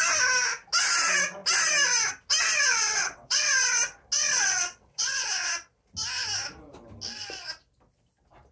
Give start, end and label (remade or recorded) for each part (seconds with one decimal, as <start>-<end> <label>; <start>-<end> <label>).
0.0-2.7 recorded; 2.7-3.5 remade; 3.5-4.2 recorded; 4.2-5.2 remade; 5.2-8.5 recorded